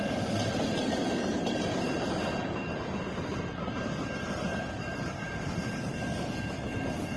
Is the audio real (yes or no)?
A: no